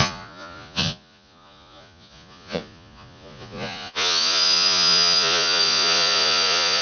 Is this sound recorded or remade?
remade